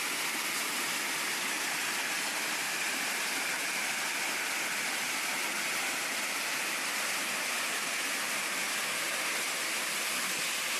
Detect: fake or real real